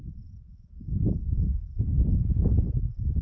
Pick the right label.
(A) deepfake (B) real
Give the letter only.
B